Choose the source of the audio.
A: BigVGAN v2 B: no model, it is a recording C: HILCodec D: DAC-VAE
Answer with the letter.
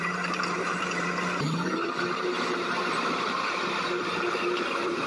A